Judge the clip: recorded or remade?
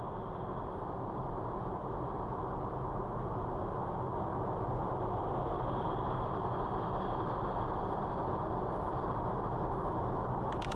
recorded